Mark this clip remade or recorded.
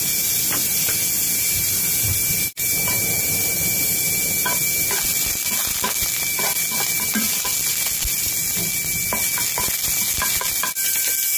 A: recorded